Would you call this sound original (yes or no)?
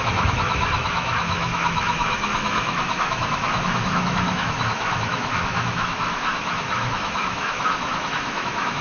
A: no